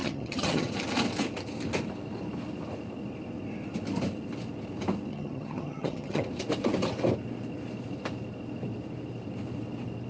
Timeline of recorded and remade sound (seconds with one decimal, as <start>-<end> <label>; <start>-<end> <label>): 0.0-0.7 remade; 0.7-5.1 recorded; 5.1-6.2 remade; 6.2-10.1 recorded